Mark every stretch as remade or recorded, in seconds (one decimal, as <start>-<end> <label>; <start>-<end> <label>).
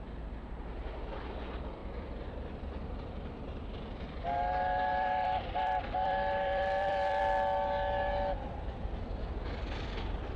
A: 0.0-1.8 recorded; 1.8-3.4 remade; 3.4-4.9 recorded; 4.9-7.2 remade; 7.2-10.4 recorded